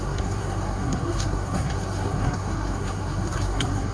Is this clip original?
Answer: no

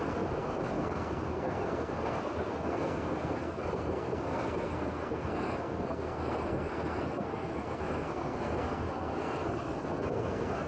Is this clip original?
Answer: no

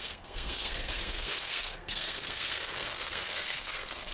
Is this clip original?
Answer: no